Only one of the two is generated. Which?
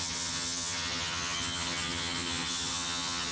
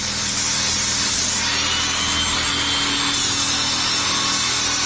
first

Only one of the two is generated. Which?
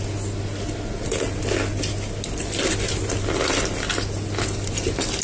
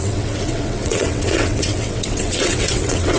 second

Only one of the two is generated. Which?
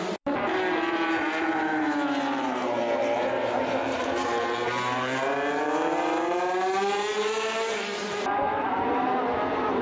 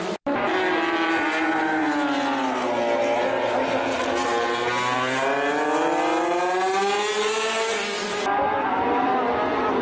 first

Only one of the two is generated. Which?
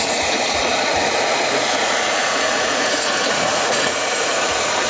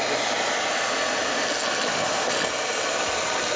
first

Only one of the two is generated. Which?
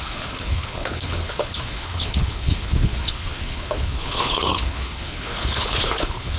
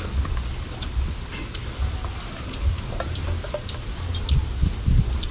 first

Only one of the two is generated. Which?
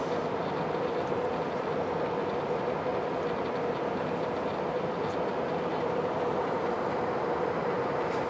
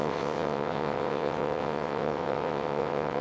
second